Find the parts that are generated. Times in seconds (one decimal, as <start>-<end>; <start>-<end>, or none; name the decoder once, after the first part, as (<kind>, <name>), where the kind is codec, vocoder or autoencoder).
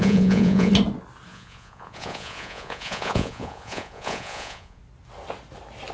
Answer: 0.0-0.7 (vocoder, Vocos); 1.3-4.8